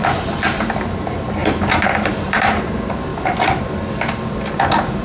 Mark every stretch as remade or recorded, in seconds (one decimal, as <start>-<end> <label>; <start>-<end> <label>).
0.0-1.4 recorded; 1.4-2.7 remade; 2.7-3.1 recorded; 3.1-3.6 remade; 3.6-5.0 recorded

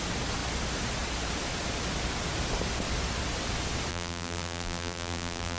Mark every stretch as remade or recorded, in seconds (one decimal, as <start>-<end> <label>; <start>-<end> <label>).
0.0-3.9 recorded; 3.9-5.6 remade

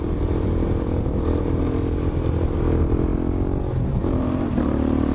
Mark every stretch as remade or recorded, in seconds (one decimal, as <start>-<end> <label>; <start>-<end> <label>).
0.0-3.1 remade; 3.1-3.9 recorded; 3.9-5.1 remade

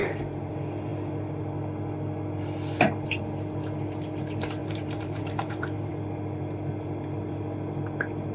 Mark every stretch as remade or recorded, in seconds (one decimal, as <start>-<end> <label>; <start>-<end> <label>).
0.0-0.5 remade; 0.5-4.6 recorded; 4.6-5.9 remade; 5.9-8.3 recorded